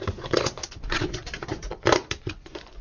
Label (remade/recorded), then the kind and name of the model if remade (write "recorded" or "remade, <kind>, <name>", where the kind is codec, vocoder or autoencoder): remade, vocoder, Vocos